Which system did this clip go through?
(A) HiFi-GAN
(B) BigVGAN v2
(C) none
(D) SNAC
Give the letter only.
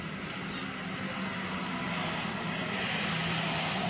C